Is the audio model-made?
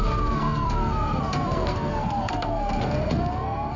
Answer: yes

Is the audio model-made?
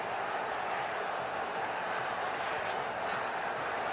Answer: yes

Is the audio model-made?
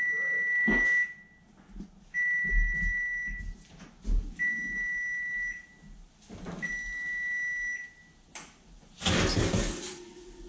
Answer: no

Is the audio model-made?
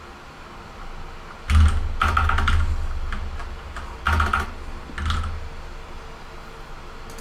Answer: no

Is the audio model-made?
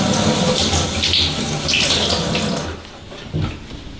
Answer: no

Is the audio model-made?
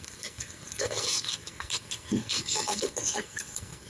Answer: yes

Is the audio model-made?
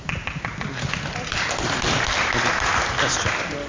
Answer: no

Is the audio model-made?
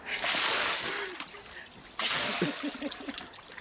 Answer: no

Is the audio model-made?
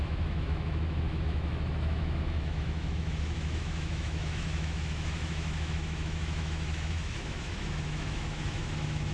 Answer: yes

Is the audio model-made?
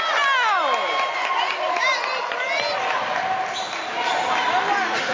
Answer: no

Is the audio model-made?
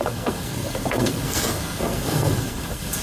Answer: yes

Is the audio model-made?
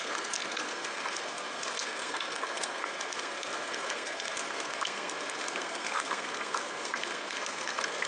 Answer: yes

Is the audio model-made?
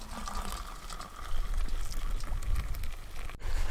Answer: no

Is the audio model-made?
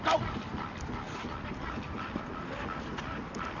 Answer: yes